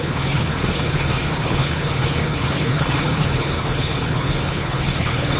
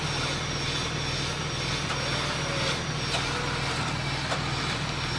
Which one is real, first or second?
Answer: second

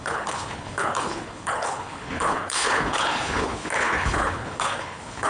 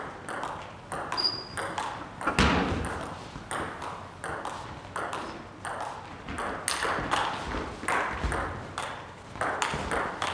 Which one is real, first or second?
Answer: second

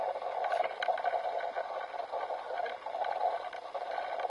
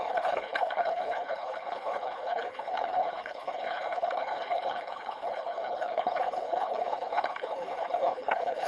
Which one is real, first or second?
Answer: first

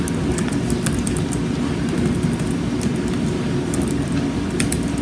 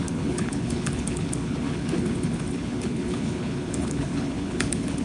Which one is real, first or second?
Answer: first